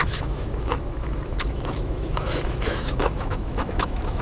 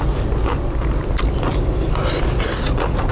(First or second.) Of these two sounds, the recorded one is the second